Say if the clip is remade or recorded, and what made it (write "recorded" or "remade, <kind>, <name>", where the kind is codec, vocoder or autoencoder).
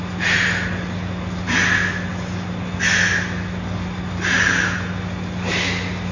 recorded